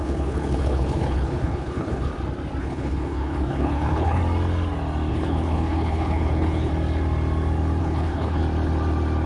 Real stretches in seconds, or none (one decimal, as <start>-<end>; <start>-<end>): 2.1-2.6; 4.2-5.1; 6.7-7.8; 8.4-9.3